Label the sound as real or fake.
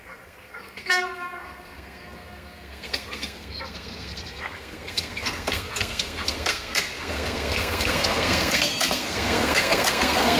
fake